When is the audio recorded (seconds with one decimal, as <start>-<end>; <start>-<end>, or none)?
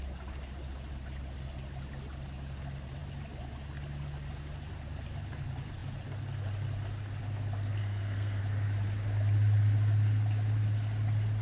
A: 0.0-7.8; 8.4-11.4